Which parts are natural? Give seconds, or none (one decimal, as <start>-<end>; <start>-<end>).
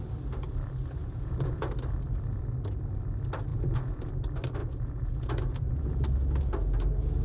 0.0-1.0; 1.7-3.5; 4.1-4.6; 5.9-7.2